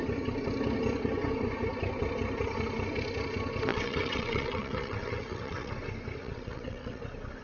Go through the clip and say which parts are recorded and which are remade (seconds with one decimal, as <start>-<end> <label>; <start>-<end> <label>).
0.0-3.7 recorded; 3.7-5.7 remade; 5.7-6.2 recorded; 6.2-7.0 remade; 7.0-7.4 recorded